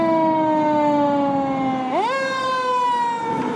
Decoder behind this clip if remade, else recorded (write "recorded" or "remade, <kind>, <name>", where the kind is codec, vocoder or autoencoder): recorded